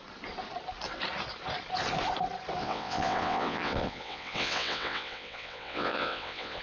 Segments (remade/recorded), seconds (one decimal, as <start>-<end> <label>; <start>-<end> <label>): 0.0-2.6 recorded; 2.6-6.6 remade